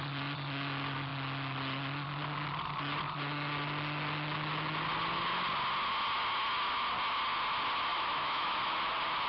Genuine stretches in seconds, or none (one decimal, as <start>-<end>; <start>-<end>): 0.0-7.9; 8.9-9.3